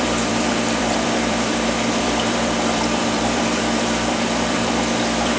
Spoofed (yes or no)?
yes